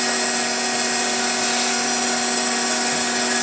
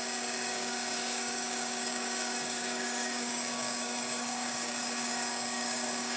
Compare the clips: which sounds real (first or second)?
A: first